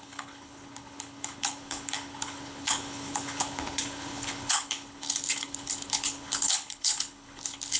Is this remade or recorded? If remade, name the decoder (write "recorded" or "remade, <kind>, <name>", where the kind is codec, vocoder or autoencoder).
remade, codec, HILCodec